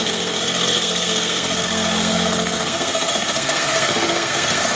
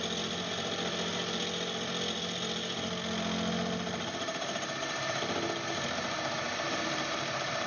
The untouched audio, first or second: second